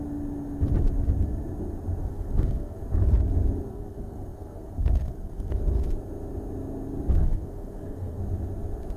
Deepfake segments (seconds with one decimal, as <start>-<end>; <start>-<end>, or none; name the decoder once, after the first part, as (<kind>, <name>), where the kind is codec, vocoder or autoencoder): 2.0-2.8 (codec, SNAC); 3.7-5.5; 7.2-8.2